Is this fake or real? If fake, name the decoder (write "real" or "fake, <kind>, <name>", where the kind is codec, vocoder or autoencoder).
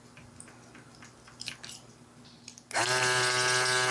real